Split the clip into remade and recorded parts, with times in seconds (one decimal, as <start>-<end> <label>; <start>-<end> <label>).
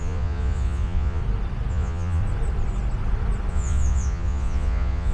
0.0-1.2 remade; 1.2-1.7 recorded; 1.7-2.2 remade; 2.2-3.5 recorded; 3.5-5.1 remade